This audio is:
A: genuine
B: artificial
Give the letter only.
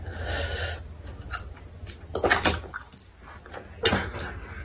A